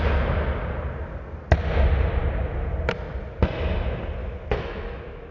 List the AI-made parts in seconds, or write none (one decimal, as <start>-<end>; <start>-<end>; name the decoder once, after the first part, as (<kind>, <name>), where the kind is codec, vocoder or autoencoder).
4.2-5.3 (autoencoder, DAC-VAE)